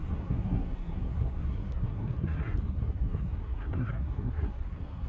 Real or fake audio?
fake